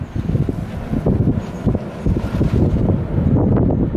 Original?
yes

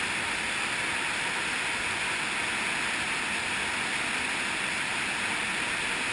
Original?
yes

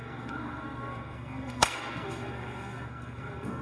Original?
no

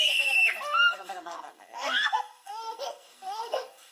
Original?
no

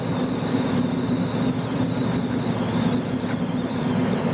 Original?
yes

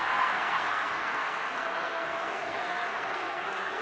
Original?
no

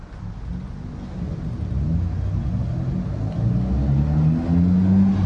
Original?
yes